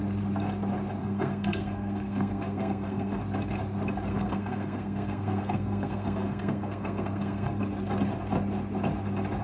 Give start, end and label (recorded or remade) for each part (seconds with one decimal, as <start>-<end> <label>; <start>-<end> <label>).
0.0-1.0 recorded; 1.0-3.2 remade; 3.2-4.1 recorded; 4.1-7.6 remade; 7.6-9.4 recorded